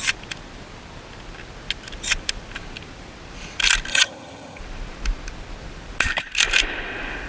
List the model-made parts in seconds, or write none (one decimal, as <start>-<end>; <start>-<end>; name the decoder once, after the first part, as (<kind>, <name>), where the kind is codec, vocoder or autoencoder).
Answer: 3.9-4.6 (vocoder, HiFi-GAN)